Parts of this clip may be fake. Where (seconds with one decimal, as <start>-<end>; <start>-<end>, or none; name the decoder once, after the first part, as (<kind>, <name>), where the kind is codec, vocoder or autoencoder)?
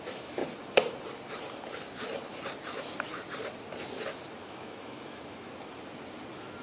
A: 0.0-0.4 (autoencoder, DAC-VAE); 4.4-5.5